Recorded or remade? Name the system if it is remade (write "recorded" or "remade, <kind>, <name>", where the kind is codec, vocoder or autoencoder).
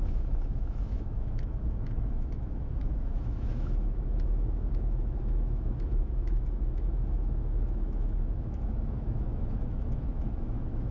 remade, autoencoder, DAC-VAE